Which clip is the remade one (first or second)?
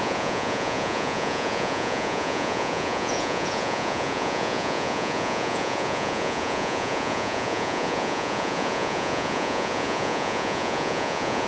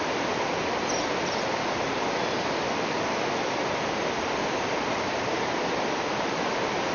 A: first